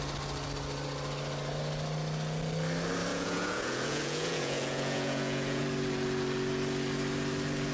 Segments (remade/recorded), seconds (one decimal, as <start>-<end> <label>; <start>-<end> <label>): 0.0-3.1 recorded; 3.1-5.6 remade; 5.6-7.7 recorded